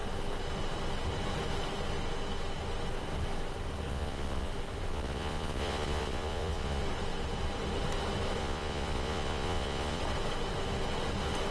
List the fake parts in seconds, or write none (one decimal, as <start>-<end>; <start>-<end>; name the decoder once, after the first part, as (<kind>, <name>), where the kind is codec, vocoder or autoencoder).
3.9-4.5 (vocoder, Vocos); 4.9-6.8; 8.4-10.0

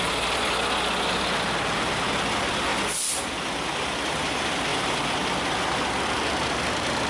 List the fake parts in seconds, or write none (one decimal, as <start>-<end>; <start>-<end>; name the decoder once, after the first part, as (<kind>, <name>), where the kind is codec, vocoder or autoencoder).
4.7-5.4 (vocoder, BigVGAN v2)

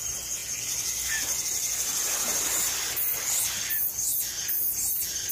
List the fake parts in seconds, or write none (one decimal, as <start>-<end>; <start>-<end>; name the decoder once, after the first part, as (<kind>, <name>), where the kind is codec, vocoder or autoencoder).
none